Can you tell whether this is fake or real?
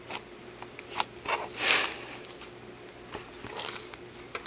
real